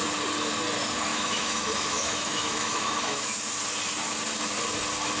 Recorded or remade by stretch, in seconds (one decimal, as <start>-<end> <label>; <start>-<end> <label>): 0.0-1.1 recorded; 1.1-3.4 remade; 3.4-5.2 recorded